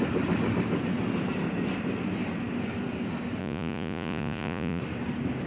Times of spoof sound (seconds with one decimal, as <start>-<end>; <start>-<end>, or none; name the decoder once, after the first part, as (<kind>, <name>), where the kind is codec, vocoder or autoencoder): 3.4-4.8 (vocoder, Vocos)